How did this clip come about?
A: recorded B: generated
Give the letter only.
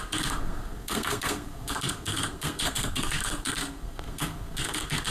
B